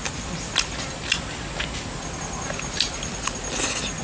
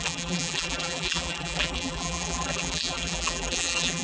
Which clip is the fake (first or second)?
second